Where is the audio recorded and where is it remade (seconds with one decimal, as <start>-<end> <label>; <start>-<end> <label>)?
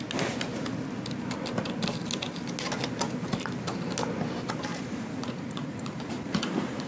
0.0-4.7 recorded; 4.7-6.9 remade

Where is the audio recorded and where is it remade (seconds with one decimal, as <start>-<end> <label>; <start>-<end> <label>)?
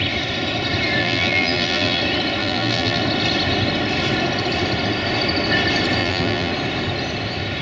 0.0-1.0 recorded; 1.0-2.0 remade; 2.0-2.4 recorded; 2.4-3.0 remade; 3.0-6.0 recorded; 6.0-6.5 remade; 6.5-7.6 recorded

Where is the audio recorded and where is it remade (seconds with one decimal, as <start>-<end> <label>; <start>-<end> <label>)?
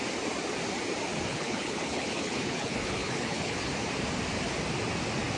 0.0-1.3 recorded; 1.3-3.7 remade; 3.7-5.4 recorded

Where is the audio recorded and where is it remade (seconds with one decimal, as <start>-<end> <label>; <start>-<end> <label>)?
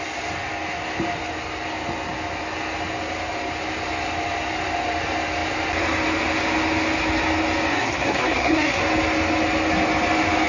0.0-7.7 recorded; 7.7-8.8 remade; 8.8-10.5 recorded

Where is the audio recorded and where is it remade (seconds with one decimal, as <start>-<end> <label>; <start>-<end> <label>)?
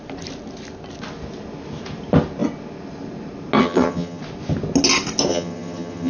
0.0-3.6 recorded; 3.6-4.2 remade; 4.2-5.3 recorded; 5.3-6.1 remade